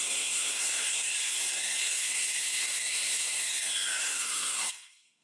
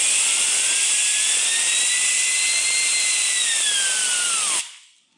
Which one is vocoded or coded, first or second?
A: first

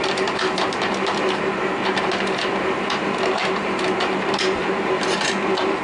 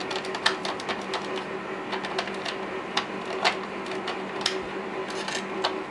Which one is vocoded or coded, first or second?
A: first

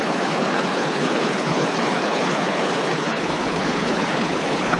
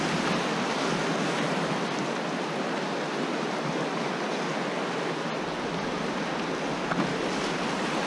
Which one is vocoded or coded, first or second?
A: first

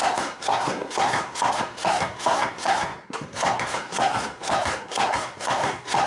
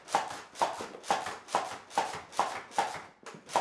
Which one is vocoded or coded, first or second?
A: first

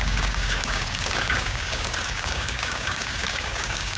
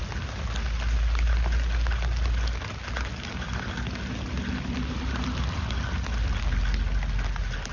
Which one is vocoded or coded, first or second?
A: first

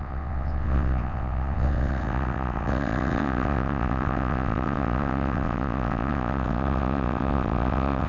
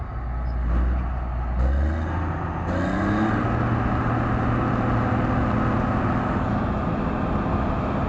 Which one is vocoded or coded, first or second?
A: first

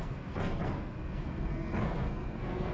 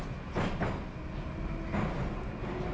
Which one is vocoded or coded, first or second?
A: first